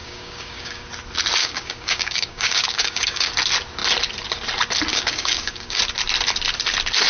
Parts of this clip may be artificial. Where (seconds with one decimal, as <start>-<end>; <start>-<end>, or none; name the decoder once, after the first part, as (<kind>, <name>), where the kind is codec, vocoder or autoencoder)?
0.0-0.9 (codec, DAC); 1.4-3.3; 4.9-5.8